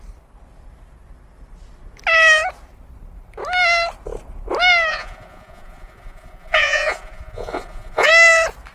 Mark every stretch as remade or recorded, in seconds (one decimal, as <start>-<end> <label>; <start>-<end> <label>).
0.0-4.9 recorded; 4.9-8.1 remade; 8.1-8.7 recorded